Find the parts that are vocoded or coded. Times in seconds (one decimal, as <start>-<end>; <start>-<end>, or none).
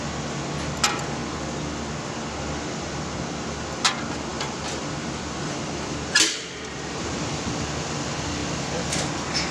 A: 4.3-7.4